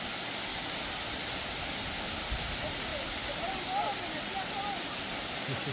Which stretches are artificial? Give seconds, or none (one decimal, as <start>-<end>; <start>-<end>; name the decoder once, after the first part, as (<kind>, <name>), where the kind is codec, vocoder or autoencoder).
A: none